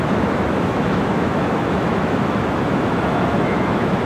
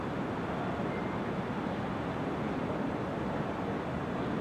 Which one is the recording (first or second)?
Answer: second